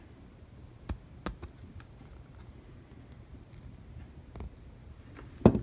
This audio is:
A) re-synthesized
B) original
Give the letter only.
B